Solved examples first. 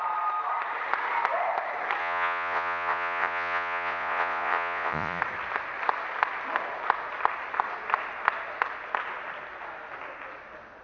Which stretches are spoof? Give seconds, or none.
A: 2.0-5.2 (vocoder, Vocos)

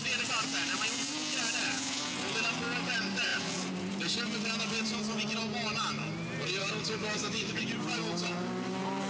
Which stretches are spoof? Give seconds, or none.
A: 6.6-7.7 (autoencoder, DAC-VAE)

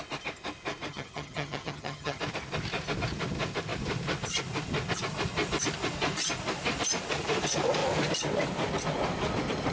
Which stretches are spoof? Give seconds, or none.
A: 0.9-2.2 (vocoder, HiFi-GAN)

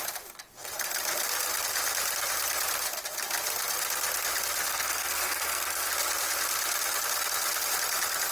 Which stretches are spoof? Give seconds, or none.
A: 4.7-5.9 (codec, SNAC)

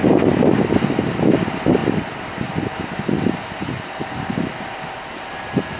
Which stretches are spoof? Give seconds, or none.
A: 1.8-3.9 (vocoder, BigVGAN v2)